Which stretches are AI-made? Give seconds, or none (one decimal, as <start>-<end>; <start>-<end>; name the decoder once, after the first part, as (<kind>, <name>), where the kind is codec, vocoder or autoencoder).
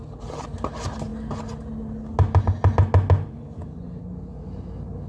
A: none